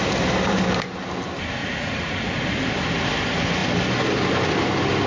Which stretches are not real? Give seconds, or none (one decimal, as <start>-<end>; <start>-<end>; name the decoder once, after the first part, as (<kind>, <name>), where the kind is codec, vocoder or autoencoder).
1.6-2.3 (vocoder, Vocos)